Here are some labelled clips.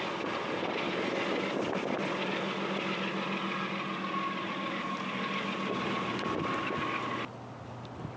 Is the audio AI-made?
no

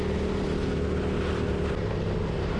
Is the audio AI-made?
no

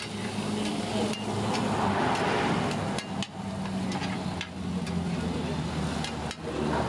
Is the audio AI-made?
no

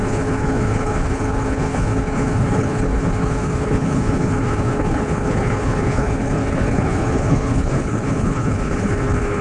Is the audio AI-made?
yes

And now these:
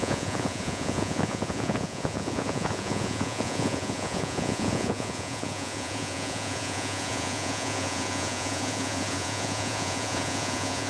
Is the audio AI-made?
yes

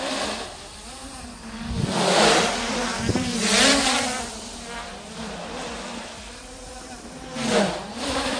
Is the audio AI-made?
no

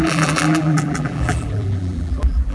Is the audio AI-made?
yes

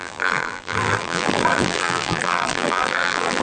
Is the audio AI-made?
yes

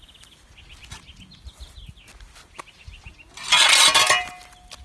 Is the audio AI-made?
no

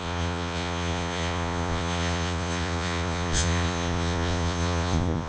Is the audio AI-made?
yes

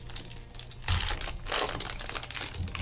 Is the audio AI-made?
no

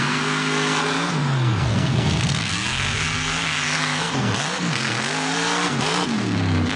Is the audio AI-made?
yes